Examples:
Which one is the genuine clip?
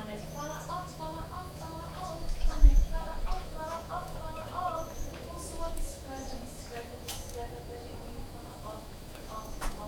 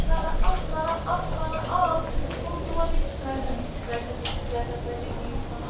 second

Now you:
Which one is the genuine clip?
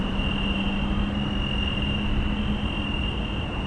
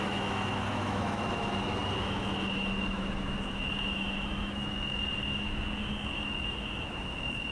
first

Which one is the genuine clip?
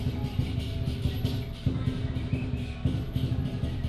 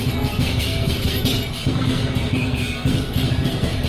first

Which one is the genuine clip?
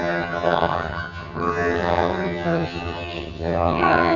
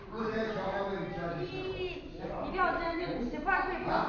second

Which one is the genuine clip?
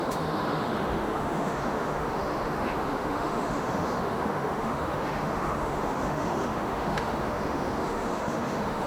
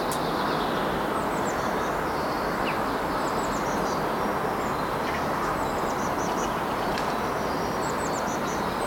second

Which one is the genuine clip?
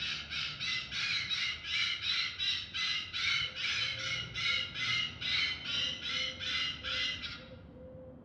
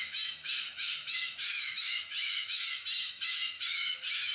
first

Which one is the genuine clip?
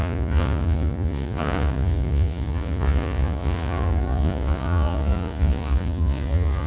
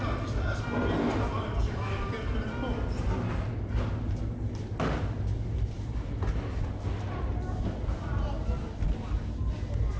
second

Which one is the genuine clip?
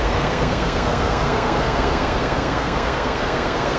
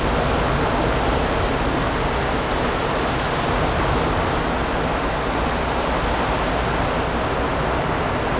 second